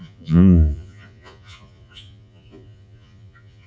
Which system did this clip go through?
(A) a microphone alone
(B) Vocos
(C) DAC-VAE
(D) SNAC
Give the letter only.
B